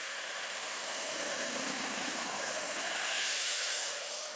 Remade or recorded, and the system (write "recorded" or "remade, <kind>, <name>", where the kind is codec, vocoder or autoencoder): remade, autoencoder, DAC-VAE